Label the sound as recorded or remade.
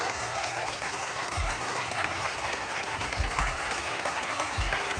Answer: remade